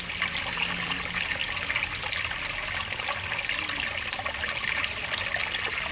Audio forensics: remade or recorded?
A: recorded